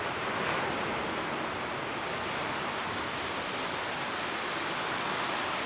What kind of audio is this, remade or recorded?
recorded